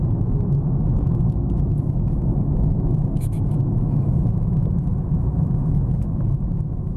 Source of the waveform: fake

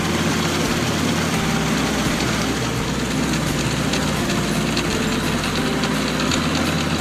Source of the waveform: real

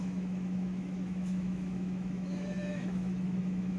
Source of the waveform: fake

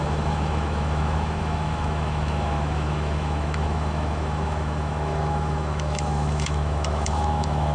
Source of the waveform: fake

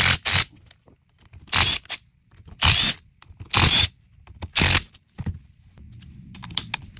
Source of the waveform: real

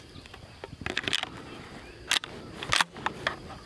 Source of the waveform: real